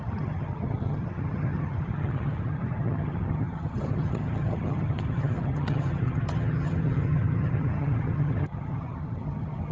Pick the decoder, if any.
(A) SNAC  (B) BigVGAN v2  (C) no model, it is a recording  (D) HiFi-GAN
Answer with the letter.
D